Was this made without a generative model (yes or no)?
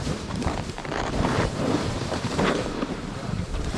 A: no